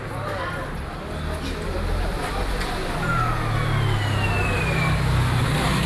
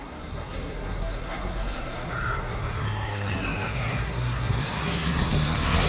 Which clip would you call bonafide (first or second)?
first